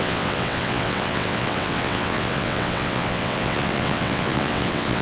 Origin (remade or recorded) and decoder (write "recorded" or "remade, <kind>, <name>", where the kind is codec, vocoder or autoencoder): remade, vocoder, WaveNeXt